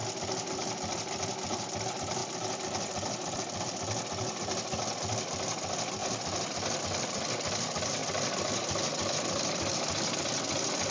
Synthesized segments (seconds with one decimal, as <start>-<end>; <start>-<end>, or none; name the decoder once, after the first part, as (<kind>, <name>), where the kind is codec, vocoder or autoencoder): none